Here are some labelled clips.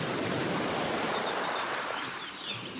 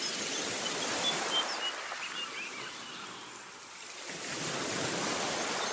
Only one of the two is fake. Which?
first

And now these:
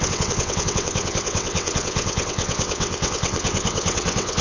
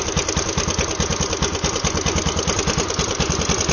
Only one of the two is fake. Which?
first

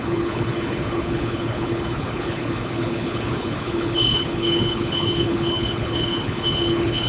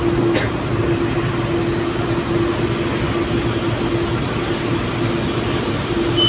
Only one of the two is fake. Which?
first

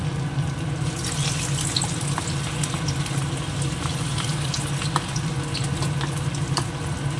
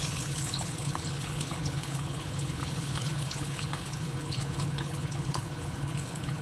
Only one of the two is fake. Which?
second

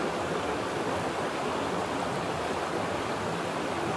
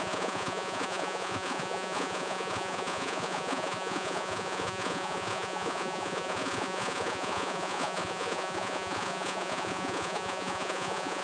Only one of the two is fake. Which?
second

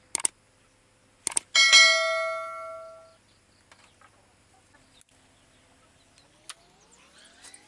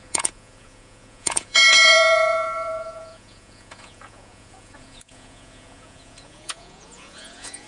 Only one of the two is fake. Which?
second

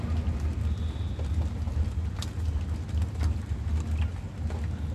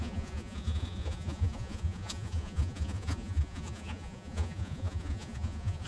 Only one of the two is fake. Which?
second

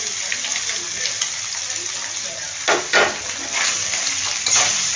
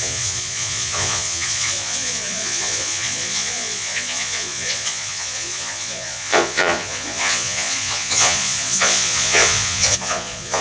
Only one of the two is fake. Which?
second